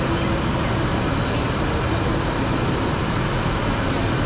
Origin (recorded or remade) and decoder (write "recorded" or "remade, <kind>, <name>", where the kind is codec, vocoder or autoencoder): recorded